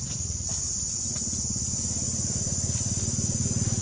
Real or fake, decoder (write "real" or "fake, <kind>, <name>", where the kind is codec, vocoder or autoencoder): real